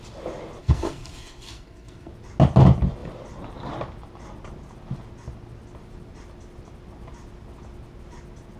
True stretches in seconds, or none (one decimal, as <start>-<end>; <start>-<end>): 0.0-0.6; 2.1-8.6